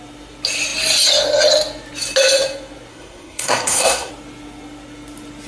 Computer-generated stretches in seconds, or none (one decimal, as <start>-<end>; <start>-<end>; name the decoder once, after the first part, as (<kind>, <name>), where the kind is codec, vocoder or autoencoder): 2.9-4.1 (codec, SNAC)